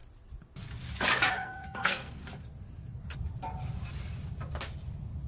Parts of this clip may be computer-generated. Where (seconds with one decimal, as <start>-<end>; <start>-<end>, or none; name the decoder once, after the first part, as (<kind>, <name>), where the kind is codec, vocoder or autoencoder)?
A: 1.3-2.2 (codec, SNAC)